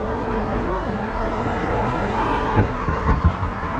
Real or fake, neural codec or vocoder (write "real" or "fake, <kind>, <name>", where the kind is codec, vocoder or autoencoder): fake, codec, SNAC